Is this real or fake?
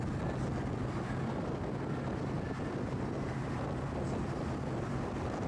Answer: real